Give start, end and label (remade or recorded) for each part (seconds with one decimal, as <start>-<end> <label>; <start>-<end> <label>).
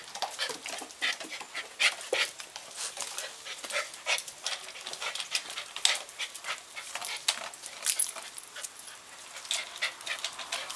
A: 0.0-10.8 recorded